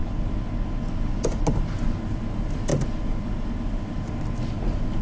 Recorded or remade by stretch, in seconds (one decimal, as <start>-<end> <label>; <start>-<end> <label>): 0.0-5.0 recorded